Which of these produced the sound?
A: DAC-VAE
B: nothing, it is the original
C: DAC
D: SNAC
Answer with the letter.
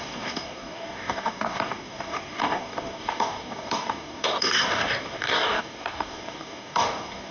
C